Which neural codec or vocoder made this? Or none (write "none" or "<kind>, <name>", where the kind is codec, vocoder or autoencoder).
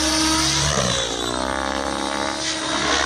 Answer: none